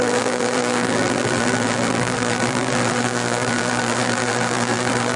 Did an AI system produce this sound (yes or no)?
yes